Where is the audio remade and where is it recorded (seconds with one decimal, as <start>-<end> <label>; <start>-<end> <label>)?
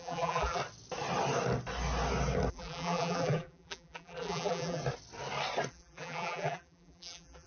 0.0-0.6 remade; 0.6-2.5 recorded; 2.5-4.8 remade; 4.8-5.7 recorded; 5.7-7.5 remade